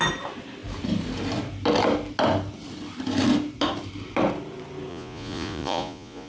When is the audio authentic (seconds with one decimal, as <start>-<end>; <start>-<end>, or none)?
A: 0.0-4.9